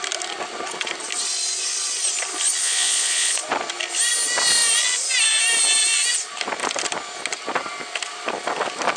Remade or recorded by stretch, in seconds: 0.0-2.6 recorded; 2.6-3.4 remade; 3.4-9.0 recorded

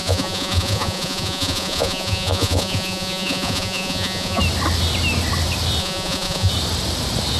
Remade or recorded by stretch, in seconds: 0.0-4.4 remade; 4.4-5.8 recorded; 5.8-6.5 remade; 6.5-7.4 recorded